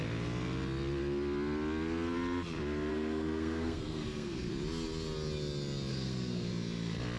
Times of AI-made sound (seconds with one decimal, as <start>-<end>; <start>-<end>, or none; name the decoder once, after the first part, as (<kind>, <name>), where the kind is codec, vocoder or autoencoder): 2.9-4.5 (codec, SNAC); 5.9-6.5